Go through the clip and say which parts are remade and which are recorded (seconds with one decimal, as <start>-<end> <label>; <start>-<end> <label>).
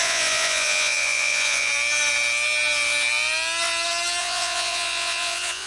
0.0-1.7 remade; 1.7-4.2 recorded; 4.2-5.7 remade